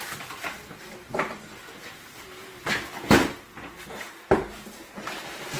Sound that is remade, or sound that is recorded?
recorded